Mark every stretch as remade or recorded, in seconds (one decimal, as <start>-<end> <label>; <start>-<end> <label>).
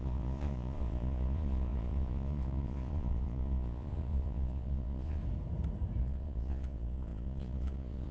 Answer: 0.0-5.2 remade; 5.2-6.0 recorded; 6.0-8.1 remade